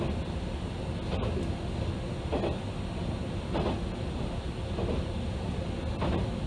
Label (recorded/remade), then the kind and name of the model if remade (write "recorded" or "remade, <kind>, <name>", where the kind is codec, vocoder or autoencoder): recorded